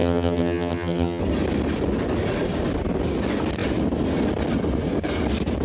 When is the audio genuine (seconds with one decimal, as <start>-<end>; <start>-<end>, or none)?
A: 1.2-5.6